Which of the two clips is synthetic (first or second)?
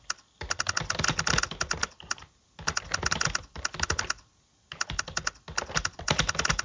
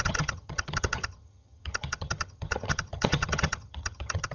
second